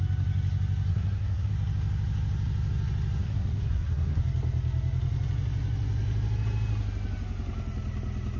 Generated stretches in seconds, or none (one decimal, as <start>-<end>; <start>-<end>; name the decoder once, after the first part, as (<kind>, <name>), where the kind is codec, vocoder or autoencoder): 0.9-1.5 (codec, SNAC); 3.2-4.2